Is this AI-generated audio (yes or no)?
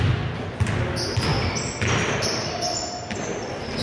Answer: no